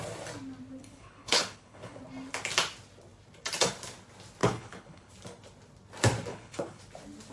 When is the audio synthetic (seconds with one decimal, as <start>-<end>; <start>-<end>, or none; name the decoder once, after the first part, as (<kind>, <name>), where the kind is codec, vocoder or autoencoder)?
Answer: 0.8-2.0 (codec, HILCodec); 4.4-5.1; 6.3-6.8